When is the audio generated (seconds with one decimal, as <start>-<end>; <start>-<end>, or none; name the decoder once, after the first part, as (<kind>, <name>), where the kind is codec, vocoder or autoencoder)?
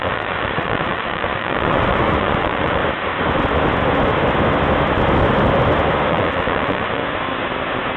0.0-2.8 (vocoder, Vocos); 6.1-7.0